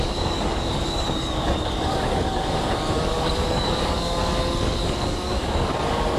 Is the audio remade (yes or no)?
yes